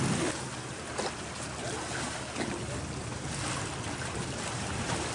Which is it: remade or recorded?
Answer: recorded